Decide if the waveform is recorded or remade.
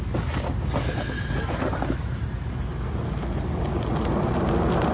recorded